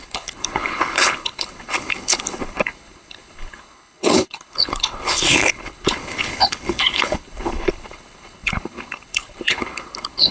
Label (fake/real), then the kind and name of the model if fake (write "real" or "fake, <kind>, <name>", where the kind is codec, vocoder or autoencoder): fake, codec, HILCodec